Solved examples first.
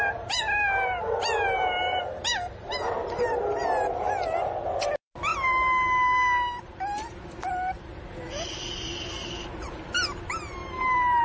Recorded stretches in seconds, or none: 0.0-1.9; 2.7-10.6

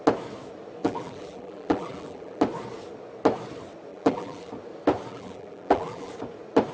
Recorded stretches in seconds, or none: 0.0-0.8; 2.4-3.9; 4.5-5.1; 6.1-6.7

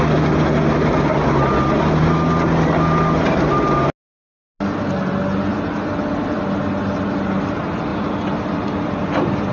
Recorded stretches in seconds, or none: 0.0-7.9

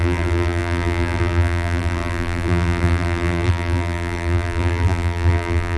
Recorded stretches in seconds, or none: none

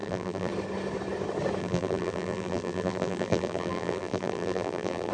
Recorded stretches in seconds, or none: 0.5-1.6